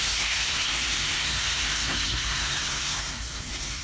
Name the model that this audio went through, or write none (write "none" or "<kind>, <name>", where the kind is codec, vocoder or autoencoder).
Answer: codec, SNAC